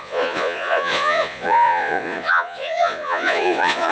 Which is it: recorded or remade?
remade